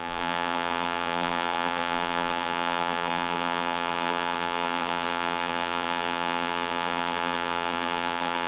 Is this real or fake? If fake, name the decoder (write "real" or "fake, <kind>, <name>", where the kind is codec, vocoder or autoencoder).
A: fake, vocoder, BigVGAN v2